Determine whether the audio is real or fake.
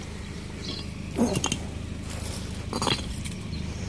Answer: real